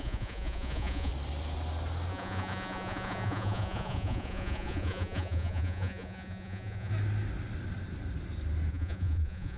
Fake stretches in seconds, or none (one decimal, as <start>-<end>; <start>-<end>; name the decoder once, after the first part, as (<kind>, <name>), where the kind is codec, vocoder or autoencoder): 0.0-1.1 (vocoder, Vocos); 2.1-6.9; 8.7-9.6